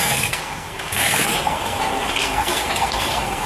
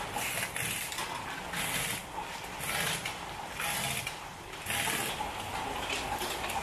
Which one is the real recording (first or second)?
second